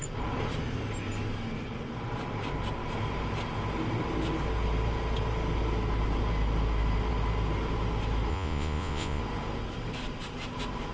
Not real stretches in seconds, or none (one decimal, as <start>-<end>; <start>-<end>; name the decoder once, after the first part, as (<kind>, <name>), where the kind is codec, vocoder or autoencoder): 8.3-9.2 (vocoder, Vocos)